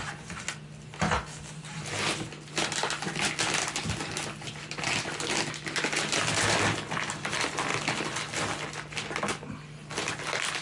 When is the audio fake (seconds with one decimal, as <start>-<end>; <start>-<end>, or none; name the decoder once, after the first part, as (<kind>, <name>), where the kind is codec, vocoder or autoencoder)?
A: none